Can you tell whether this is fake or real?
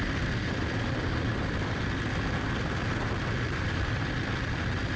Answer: fake